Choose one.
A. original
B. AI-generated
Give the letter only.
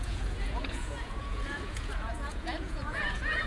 B